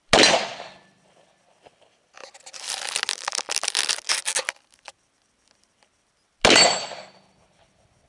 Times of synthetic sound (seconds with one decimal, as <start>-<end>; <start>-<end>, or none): none